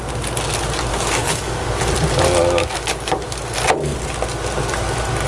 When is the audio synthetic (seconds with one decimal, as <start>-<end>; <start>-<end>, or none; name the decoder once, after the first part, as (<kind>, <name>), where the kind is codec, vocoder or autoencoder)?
0.9-1.8 (codec, DAC); 2.6-3.2